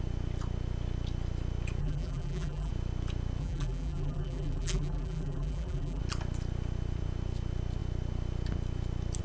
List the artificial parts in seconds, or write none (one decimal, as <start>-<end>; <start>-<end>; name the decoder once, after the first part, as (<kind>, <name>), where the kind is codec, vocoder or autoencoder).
1.8-2.7 (vocoder, BigVGAN v2); 3.4-6.0